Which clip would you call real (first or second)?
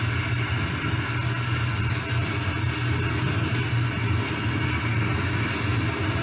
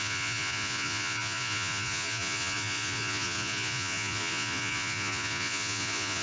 first